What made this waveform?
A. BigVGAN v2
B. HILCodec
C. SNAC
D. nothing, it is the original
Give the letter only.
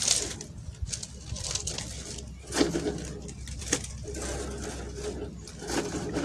D